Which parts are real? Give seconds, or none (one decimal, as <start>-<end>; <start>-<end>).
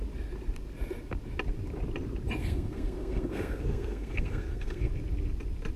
0.0-2.4; 4.9-5.8